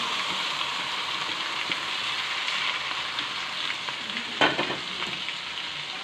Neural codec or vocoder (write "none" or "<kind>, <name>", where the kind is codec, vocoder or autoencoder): none